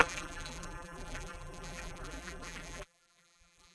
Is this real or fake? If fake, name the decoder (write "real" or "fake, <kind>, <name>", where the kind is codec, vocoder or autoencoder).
fake, vocoder, BigVGAN v2